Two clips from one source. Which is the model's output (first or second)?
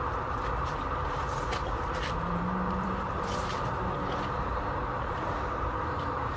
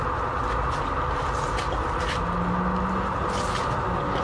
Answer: first